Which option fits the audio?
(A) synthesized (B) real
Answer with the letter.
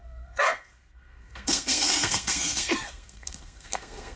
A